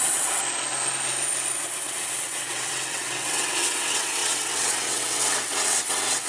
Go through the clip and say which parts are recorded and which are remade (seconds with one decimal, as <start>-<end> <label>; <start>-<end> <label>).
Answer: 0.0-0.4 remade; 0.4-1.6 recorded; 1.6-6.3 remade